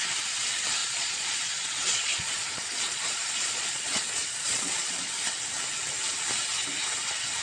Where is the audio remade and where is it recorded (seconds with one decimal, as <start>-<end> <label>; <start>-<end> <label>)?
0.0-0.8 recorded; 0.8-5.1 remade; 5.1-7.4 recorded